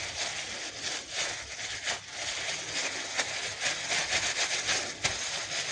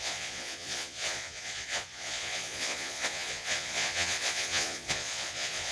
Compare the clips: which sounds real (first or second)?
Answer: first